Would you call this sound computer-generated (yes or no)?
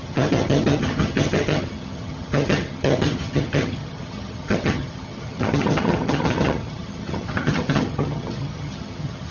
yes